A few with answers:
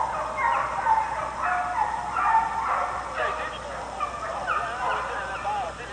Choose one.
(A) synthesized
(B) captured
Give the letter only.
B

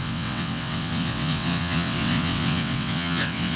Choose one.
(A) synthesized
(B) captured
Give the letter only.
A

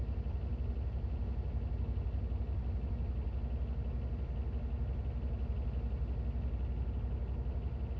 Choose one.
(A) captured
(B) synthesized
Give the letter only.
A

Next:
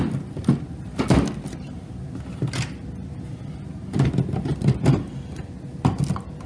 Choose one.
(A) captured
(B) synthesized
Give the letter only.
A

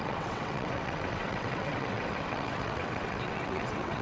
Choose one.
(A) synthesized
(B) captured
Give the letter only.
A